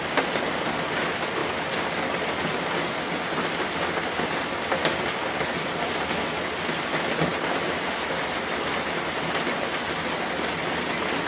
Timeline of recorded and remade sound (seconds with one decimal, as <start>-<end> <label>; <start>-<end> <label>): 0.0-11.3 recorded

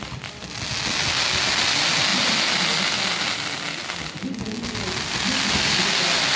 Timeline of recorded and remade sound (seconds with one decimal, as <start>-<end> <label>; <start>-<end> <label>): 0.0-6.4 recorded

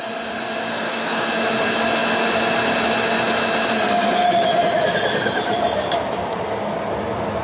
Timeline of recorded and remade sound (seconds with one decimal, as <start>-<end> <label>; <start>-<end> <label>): 0.0-0.7 recorded; 0.7-1.3 remade; 1.3-7.4 recorded

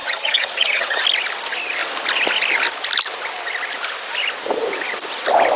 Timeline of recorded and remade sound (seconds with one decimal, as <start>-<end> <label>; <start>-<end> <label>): 0.0-1.0 remade; 1.0-5.6 recorded

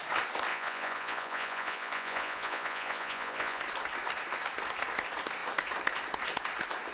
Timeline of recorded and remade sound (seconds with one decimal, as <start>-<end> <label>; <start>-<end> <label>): 0.0-0.5 recorded; 0.5-3.6 remade; 3.6-6.9 recorded

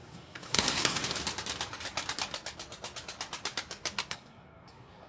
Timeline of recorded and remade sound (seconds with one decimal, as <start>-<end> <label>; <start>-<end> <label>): 0.0-1.0 remade; 1.0-4.1 recorded; 4.1-5.1 remade

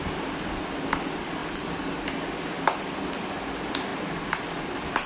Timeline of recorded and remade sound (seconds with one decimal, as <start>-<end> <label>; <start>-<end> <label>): 0.0-5.1 recorded

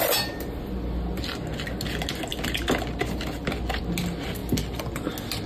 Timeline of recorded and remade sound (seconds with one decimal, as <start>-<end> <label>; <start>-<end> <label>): 0.0-5.5 recorded